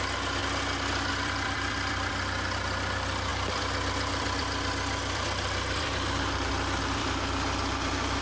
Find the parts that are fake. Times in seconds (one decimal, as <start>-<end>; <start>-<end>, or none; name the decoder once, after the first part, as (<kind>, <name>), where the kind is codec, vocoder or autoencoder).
0.0-0.4 (vocoder, BigVGAN v2); 1.1-8.2